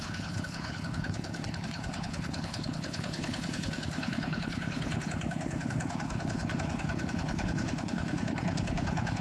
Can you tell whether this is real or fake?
fake